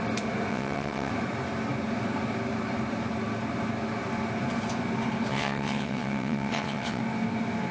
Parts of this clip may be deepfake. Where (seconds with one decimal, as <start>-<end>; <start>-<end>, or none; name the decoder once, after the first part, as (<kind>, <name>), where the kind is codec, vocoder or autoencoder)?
0.5-1.1 (vocoder, WaveNeXt); 5.3-7.0